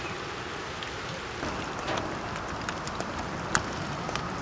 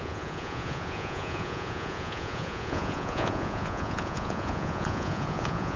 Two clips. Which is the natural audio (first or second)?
first